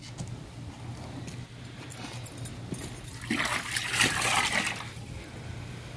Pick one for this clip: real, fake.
real